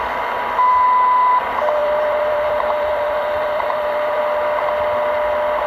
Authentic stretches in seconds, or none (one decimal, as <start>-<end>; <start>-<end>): 0.0-1.8; 4.2-5.7